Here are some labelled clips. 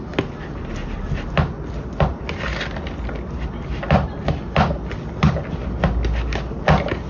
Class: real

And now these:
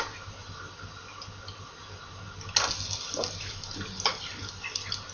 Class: real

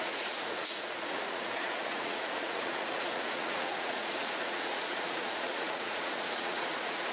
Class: fake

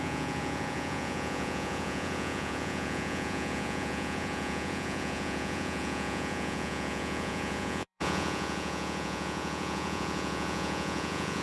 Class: fake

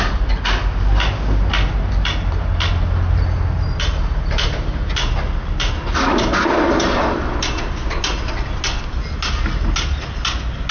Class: real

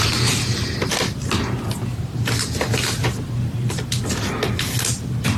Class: real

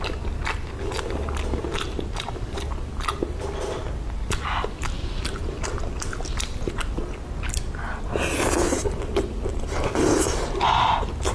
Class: real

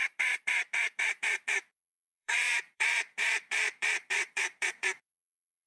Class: fake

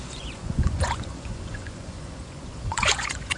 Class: fake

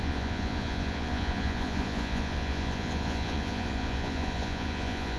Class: fake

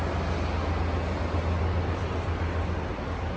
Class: real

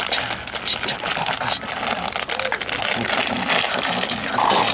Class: real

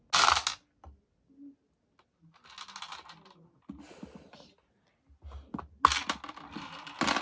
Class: real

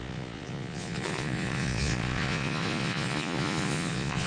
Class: fake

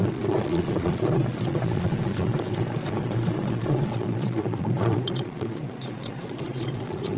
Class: fake